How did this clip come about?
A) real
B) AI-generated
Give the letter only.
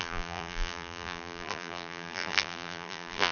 B